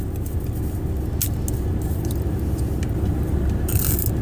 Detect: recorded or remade recorded